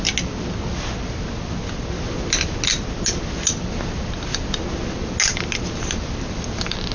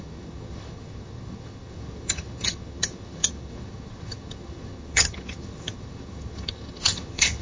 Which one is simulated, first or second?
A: second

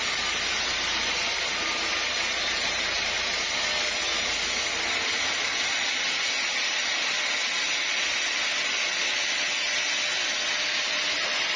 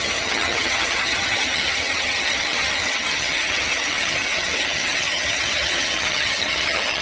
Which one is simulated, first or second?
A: second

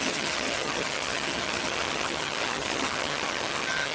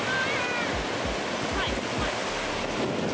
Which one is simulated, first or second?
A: first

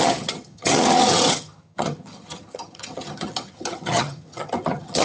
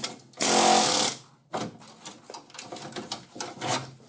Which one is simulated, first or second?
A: first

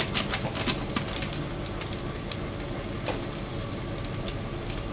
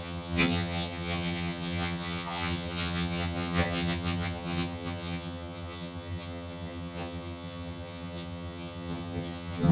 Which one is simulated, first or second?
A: second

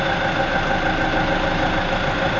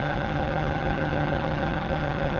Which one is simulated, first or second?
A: second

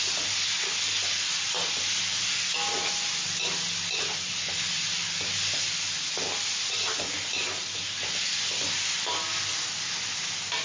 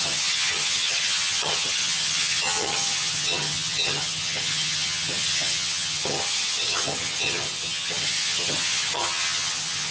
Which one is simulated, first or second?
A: second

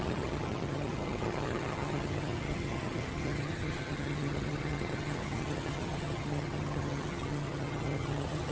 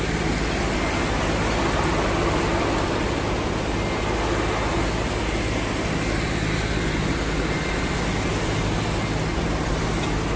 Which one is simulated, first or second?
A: first